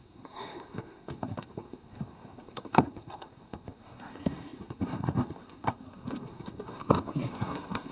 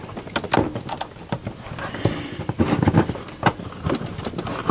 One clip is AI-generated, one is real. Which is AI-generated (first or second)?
first